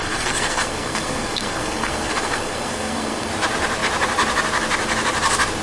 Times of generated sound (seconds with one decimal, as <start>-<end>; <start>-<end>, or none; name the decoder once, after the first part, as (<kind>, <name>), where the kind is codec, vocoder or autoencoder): 0.0-3.3 (codec, SNAC)